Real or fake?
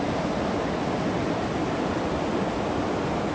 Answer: real